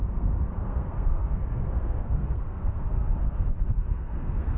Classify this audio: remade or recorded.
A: remade